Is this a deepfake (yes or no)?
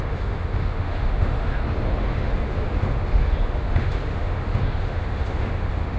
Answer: yes